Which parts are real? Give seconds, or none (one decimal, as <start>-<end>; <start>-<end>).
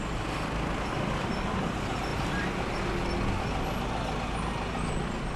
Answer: 0.0-5.4